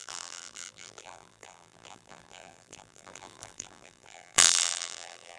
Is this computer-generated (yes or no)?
yes